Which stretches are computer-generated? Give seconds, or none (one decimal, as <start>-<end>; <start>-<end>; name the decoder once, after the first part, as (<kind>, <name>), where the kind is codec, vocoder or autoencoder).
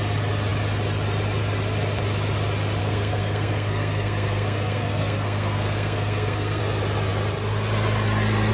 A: 2.8-6.6 (codec, SNAC)